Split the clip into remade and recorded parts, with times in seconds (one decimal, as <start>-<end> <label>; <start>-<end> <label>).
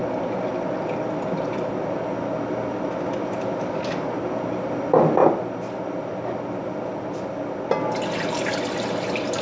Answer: 0.0-9.4 recorded